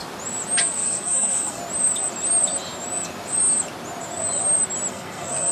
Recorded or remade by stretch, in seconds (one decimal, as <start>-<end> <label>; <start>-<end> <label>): 0.0-0.6 recorded; 0.6-1.6 remade; 1.6-4.9 recorded; 4.9-5.5 remade